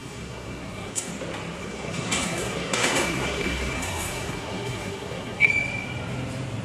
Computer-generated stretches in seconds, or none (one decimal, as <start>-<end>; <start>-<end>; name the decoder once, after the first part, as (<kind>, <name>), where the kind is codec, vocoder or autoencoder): 0.0-1.1 (codec, SNAC); 1.6-5.5